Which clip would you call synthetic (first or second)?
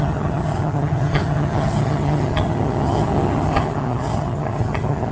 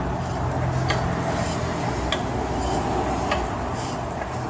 first